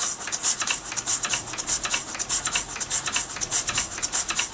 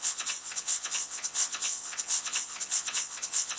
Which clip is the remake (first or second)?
second